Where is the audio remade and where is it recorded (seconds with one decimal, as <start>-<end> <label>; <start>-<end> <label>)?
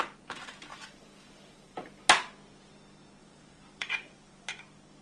0.0-0.7 recorded; 0.7-1.9 remade; 1.9-3.2 recorded; 3.2-4.6 remade; 4.6-5.0 recorded